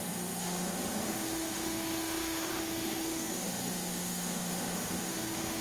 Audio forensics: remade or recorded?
remade